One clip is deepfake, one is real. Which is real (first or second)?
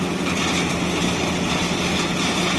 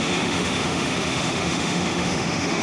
first